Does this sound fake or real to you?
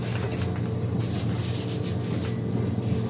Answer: real